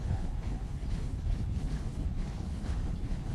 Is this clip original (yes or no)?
no